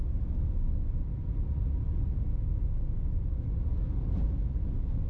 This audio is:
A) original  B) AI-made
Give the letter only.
A